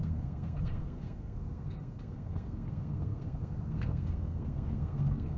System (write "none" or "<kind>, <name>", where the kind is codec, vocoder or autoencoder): codec, SNAC